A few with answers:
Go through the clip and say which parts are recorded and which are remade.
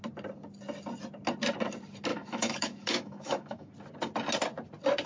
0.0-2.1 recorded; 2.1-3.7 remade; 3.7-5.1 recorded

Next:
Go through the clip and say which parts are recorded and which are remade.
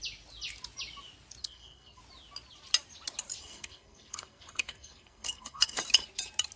0.0-1.4 recorded; 1.4-2.0 remade; 2.0-3.4 recorded; 3.4-5.8 remade; 5.8-6.6 recorded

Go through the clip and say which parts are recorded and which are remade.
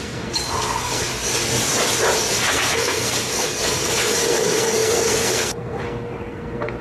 0.0-1.1 remade; 1.1-2.3 recorded; 2.3-6.8 remade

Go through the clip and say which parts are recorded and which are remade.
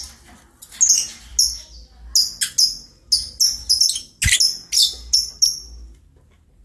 0.0-6.6 recorded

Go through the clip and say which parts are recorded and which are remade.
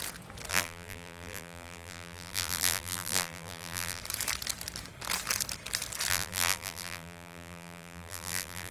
0.0-0.5 recorded; 0.5-4.0 remade; 4.0-6.1 recorded; 6.1-8.7 remade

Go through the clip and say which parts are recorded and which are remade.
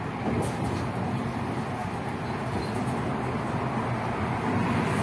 0.0-5.0 recorded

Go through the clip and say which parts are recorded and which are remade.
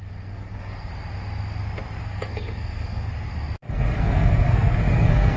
0.0-0.9 remade; 0.9-2.0 recorded; 2.0-3.1 remade; 3.1-3.7 recorded; 3.7-5.4 remade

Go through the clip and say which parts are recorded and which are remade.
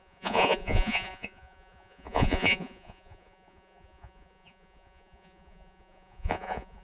0.0-6.8 remade